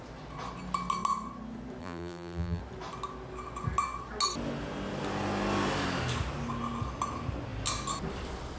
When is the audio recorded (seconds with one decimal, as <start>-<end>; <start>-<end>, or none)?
0.0-1.8; 2.6-8.6

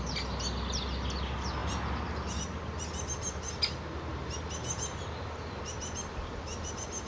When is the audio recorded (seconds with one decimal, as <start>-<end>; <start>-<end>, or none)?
0.0-7.1

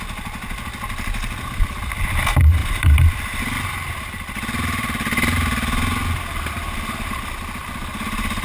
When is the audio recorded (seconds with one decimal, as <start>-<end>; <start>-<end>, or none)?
0.0-2.6; 3.4-8.4

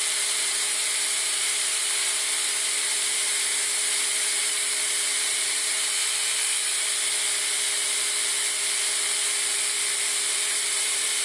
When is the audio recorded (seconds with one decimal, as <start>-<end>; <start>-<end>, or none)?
1.8-2.8; 6.0-10.3

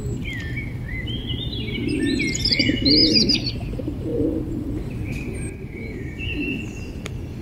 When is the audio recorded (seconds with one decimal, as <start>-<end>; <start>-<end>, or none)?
0.0-3.0; 3.5-7.4

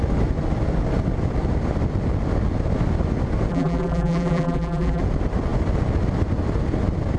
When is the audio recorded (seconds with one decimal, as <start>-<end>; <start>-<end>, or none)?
0.0-3.5; 5.0-7.2